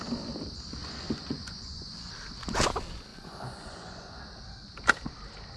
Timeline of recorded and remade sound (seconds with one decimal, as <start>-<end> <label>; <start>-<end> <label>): 0.0-0.8 recorded; 0.8-2.1 remade; 2.1-3.1 recorded; 3.1-4.2 remade; 4.2-5.6 recorded